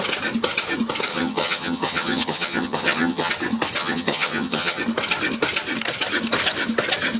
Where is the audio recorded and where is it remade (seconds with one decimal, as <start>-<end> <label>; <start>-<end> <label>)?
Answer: 0.0-1.1 recorded; 1.1-3.3 remade; 3.3-3.8 recorded; 3.8-4.8 remade; 4.8-7.2 recorded